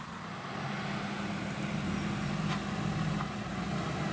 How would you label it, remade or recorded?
recorded